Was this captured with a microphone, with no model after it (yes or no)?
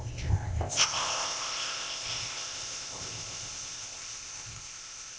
no